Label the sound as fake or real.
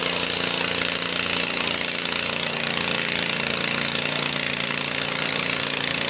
real